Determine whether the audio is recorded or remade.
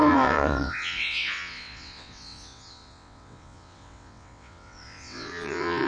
remade